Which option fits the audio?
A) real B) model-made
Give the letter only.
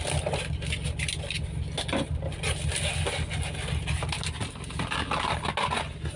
A